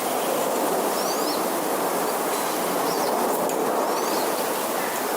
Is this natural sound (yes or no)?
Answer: yes